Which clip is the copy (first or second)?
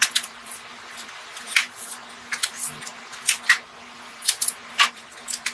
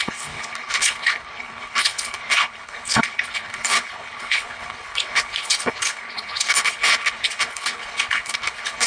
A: second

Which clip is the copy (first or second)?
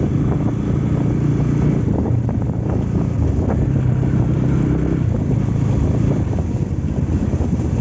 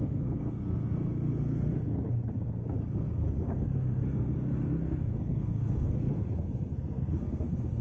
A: second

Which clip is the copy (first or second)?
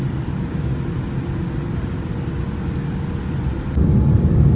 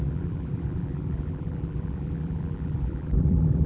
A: second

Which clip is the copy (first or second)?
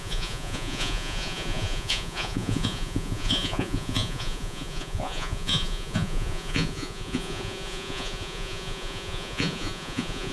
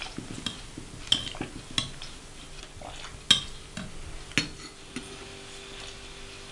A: first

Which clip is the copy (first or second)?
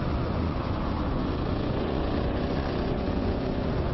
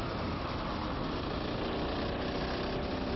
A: first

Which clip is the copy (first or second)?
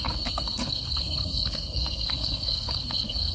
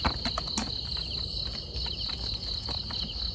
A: first